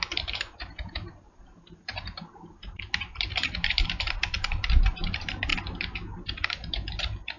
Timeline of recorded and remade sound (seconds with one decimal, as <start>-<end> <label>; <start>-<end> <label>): 0.0-5.5 remade; 5.5-6.2 recorded; 6.2-7.4 remade